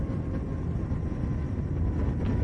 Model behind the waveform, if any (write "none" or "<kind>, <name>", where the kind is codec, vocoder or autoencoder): none